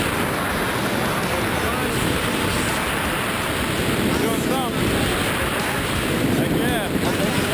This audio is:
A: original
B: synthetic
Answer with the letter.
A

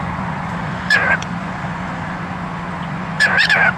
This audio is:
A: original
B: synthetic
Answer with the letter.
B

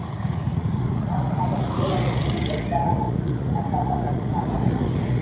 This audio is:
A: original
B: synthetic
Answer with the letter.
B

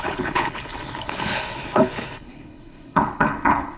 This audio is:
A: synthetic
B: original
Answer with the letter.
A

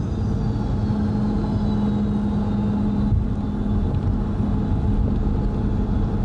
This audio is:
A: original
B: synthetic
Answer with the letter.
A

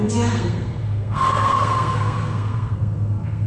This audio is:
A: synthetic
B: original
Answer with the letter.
A